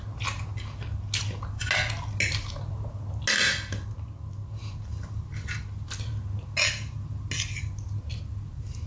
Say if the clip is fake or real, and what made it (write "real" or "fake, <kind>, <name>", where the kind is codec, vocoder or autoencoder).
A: real